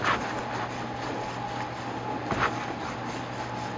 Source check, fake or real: real